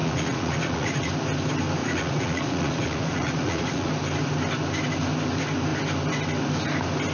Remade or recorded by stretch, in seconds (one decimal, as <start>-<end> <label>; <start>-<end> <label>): 0.0-1.1 remade; 1.1-1.8 recorded; 1.8-3.9 remade; 3.9-7.1 recorded